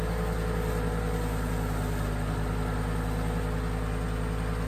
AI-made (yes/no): no